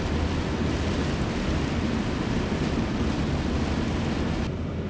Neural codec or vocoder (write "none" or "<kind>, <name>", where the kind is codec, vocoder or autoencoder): none